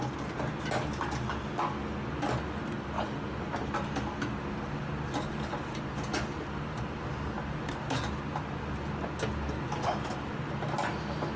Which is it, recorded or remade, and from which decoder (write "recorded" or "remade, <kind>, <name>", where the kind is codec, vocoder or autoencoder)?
recorded